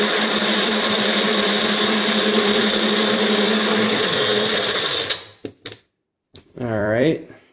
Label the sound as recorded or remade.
remade